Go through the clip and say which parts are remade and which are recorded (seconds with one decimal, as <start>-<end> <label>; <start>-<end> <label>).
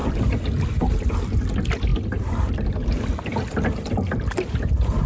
0.0-5.1 recorded